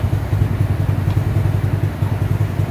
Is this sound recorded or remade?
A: recorded